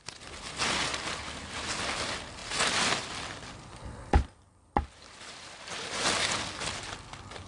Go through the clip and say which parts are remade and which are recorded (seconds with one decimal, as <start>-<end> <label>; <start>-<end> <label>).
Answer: 0.0-7.5 recorded